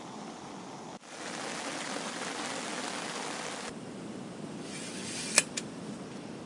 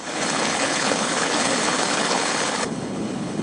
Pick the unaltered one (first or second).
first